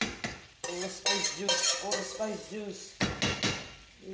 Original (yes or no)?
yes